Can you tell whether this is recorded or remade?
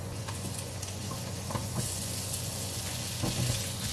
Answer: remade